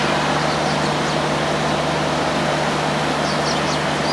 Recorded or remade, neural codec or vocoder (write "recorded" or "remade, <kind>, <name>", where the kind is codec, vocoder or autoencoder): recorded